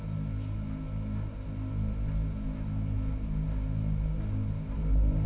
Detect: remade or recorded recorded